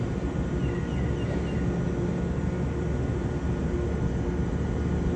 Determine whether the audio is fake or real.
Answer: real